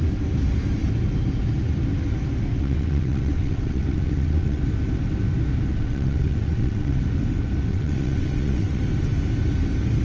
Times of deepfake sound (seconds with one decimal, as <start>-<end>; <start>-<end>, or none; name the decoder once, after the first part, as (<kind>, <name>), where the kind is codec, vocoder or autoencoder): 2.5-4.6 (vocoder, WaveNeXt); 5.7-7.0; 7.7-8.8